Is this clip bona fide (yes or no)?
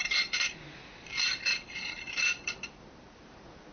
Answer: no